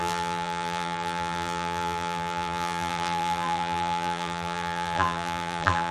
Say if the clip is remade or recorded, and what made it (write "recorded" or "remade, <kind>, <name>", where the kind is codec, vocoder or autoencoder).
remade, vocoder, BigVGAN v2